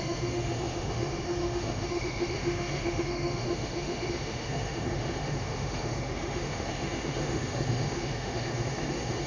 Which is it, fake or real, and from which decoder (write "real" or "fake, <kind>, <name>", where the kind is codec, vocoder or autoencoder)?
fake, autoencoder, DAC-VAE